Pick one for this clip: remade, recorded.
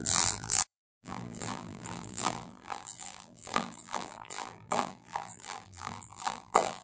remade